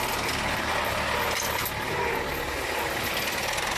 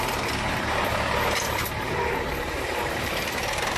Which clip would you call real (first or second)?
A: first